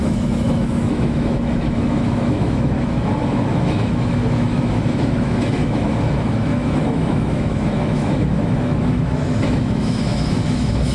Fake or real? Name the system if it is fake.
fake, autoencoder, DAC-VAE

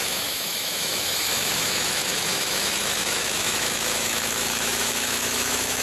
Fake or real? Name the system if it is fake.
fake, autoencoder, DAC-VAE